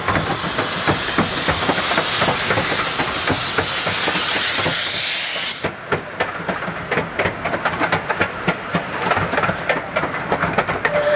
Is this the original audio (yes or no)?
yes